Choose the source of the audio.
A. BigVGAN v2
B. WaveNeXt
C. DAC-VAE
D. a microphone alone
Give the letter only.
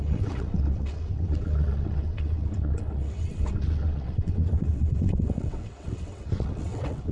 B